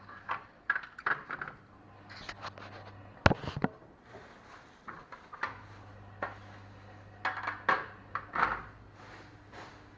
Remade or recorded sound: recorded